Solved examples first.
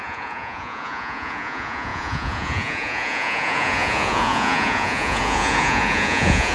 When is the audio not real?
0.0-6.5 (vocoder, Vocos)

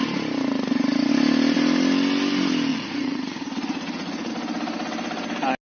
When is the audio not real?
2.7-4.3 (vocoder, Vocos)

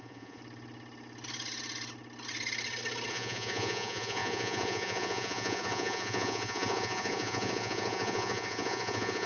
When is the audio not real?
0.0-0.4 (vocoder, Vocos); 3.1-9.3

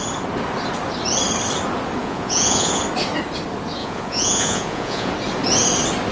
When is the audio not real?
2.0-2.8 (vocoder, Vocos); 3.8-5.1